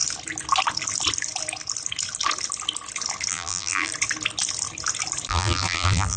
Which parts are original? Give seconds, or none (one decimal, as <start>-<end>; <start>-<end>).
0.0-3.3; 3.9-5.3